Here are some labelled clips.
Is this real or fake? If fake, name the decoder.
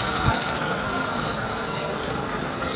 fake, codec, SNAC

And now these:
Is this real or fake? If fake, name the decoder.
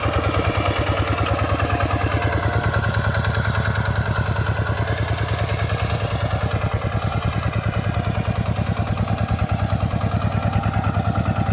real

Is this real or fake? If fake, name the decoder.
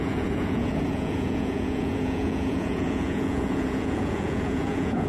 fake, vocoder, Vocos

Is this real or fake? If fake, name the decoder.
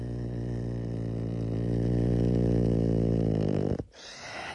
real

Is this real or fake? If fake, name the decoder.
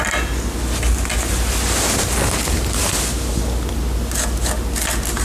real